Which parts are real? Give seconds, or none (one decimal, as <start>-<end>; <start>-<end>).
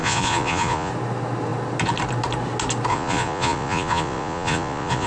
0.9-2.9